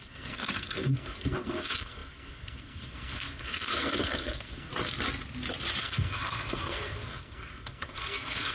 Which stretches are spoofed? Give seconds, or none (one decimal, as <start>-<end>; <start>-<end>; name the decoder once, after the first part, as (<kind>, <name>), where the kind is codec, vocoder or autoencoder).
0.0-4.7 (codec, SNAC); 5.8-8.5